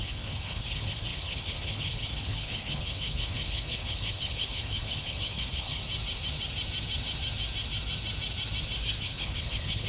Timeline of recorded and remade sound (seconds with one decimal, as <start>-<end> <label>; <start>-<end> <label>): 0.0-5.8 remade; 5.8-8.8 recorded; 8.8-9.9 remade